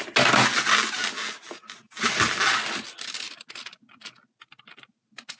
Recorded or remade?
recorded